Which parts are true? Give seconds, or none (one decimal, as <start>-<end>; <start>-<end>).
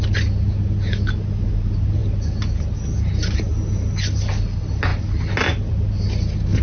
0.0-6.6